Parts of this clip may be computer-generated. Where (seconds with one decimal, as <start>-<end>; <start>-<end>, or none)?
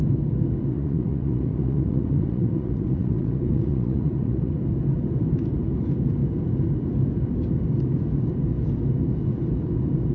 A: 0.7-4.5